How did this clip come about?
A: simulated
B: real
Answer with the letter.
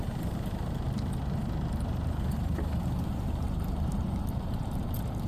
A